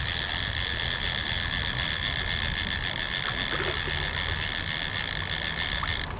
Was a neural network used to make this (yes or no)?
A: no